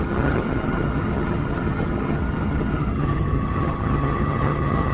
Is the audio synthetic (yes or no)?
yes